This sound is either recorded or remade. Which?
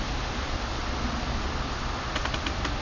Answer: recorded